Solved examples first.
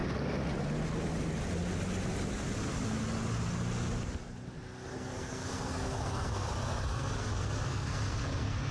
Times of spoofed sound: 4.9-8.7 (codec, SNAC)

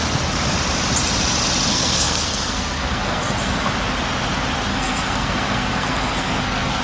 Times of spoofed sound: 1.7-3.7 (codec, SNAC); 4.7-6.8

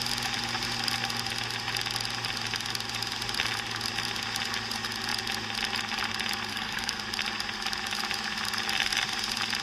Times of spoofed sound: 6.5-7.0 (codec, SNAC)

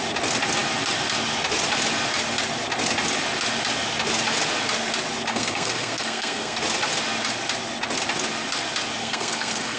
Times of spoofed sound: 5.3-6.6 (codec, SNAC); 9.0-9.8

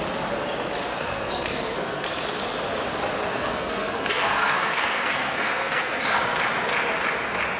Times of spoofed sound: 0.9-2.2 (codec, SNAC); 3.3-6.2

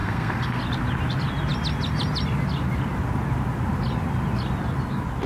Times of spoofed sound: 0.0-0.6 (codec, SNAC)

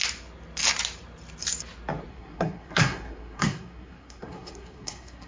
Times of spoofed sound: 2.1-5.3 (codec, SNAC)

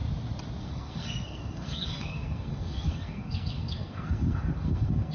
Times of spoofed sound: 0.6-5.1 (codec, SNAC)